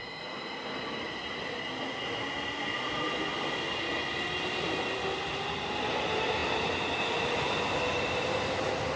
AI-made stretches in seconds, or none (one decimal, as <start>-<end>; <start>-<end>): none